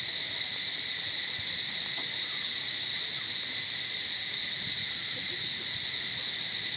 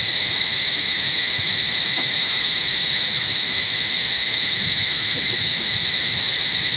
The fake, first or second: second